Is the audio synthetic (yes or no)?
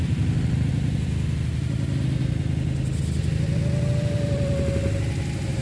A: no